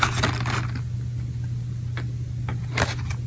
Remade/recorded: recorded